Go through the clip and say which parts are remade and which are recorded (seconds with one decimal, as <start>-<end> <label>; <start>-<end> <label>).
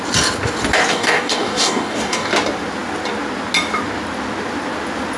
0.0-0.9 recorded; 0.9-2.3 remade; 2.3-5.2 recorded